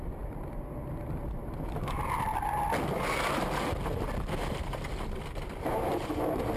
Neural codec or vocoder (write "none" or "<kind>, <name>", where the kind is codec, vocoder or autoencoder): none